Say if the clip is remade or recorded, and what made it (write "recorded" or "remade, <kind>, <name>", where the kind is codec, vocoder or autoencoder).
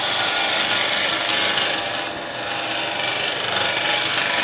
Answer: recorded